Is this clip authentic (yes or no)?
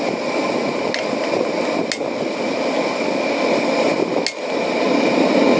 yes